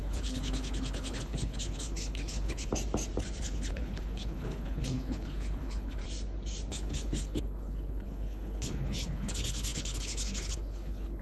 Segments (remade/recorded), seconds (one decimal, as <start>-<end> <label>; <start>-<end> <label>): 0.0-2.7 remade; 2.7-3.4 recorded; 3.4-6.0 remade; 6.0-6.7 recorded; 6.7-11.2 remade

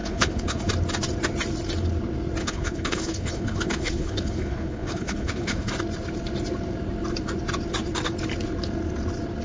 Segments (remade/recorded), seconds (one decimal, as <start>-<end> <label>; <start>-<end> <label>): 0.0-0.7 remade; 0.7-2.4 recorded; 2.4-5.7 remade; 5.7-9.4 recorded

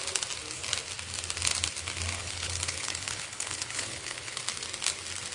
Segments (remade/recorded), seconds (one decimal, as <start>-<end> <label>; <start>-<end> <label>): 0.0-2.2 recorded; 2.2-4.4 remade; 4.4-5.3 recorded

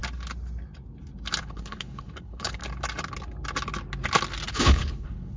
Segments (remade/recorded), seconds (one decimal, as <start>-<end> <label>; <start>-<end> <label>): 0.0-1.4 recorded; 1.4-2.6 remade; 2.6-4.5 recorded; 4.5-5.4 remade

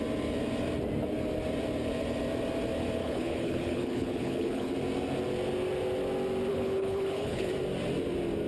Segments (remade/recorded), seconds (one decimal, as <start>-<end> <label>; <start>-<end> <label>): 0.0-3.0 recorded; 3.0-4.7 remade; 4.7-6.5 recorded; 6.5-7.5 remade; 7.5-8.5 recorded